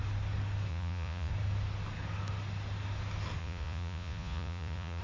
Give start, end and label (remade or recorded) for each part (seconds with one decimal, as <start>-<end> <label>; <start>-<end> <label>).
0.0-0.7 recorded; 0.7-1.3 remade; 1.3-3.4 recorded; 3.4-5.0 remade